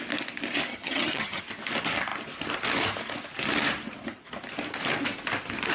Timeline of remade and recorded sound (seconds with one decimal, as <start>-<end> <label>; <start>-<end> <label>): 0.0-0.7 recorded; 0.7-1.4 remade; 1.4-5.7 recorded